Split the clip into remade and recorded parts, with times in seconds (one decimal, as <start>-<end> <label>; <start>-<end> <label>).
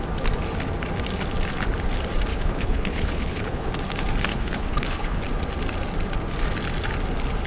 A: 0.0-2.3 recorded; 2.3-3.7 remade; 3.7-4.3 recorded; 4.3-5.2 remade; 5.2-7.5 recorded